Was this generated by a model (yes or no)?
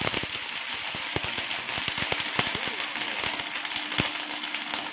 no